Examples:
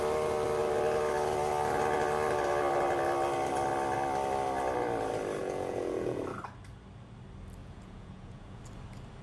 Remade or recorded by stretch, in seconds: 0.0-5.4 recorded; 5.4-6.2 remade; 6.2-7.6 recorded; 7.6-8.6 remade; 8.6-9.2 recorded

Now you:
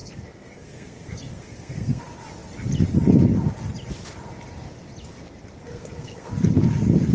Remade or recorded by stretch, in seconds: 0.0-2.0 remade; 2.0-5.6 recorded; 5.6-6.3 remade; 6.3-7.1 recorded

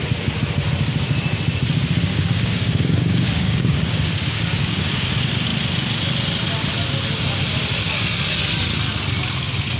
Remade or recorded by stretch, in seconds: 0.0-2.1 recorded; 2.1-5.1 remade; 5.1-9.8 recorded

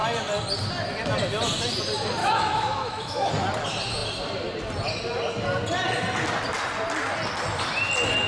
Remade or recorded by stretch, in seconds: 0.0-2.2 recorded; 2.2-3.3 remade; 3.3-8.3 recorded

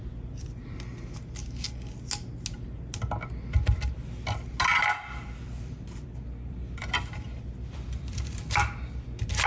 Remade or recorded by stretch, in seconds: 0.0-4.7 recorded; 4.7-8.4 remade; 8.4-9.5 recorded

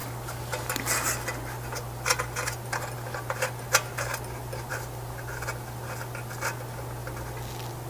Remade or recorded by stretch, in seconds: 0.0-7.9 recorded

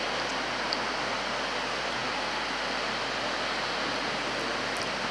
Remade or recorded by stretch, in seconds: 0.0-5.1 recorded

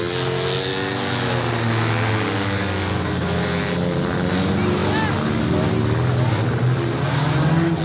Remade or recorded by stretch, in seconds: 0.0-7.8 recorded